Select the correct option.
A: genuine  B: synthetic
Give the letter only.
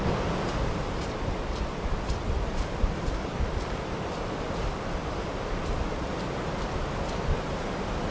A